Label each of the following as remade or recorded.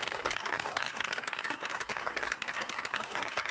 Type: remade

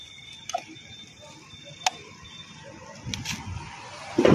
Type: recorded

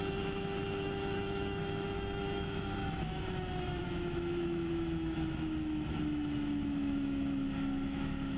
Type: remade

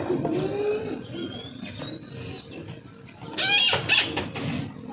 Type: recorded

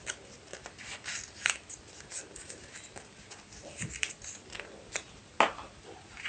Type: recorded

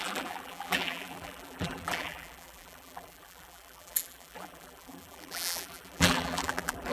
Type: remade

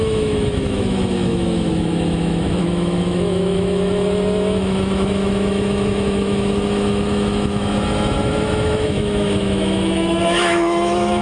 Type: remade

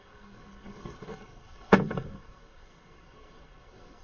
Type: remade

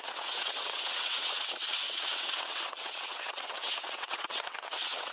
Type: remade